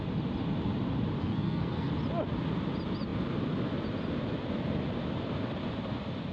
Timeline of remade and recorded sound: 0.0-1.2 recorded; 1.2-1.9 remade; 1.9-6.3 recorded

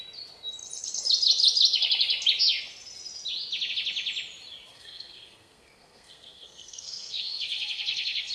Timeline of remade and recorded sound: 0.0-4.7 recorded; 4.7-8.3 remade